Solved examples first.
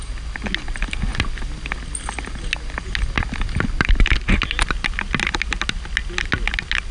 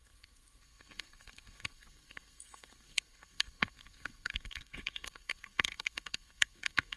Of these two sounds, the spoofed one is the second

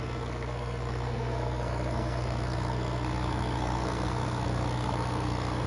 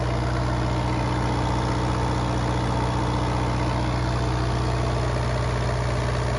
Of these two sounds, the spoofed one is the first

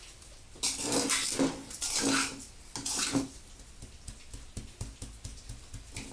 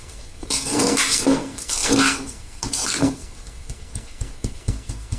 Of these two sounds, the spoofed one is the second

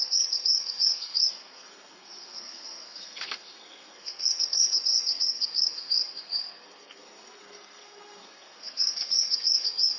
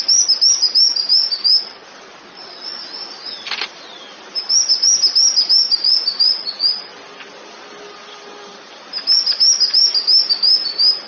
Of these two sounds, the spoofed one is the first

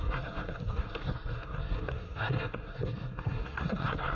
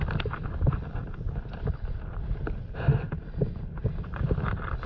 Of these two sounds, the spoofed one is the first